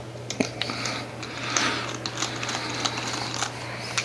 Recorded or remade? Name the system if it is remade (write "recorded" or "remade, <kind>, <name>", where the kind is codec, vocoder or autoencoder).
recorded